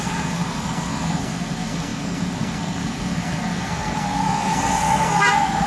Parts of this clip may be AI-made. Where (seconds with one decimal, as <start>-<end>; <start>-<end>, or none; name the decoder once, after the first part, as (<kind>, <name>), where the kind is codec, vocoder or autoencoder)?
0.0-5.7 (codec, SNAC)